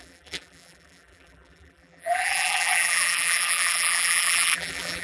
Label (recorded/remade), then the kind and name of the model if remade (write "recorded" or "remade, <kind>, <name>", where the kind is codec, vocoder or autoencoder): remade, vocoder, BigVGAN v2